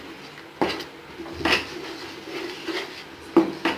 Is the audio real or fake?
real